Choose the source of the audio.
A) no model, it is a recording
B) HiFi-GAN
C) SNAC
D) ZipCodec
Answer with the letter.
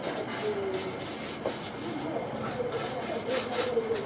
A